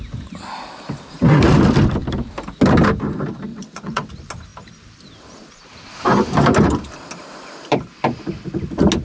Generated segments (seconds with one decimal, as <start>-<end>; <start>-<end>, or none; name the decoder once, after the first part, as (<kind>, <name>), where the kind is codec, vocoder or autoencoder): 3.5-4.1 (vocoder, WaveNeXt)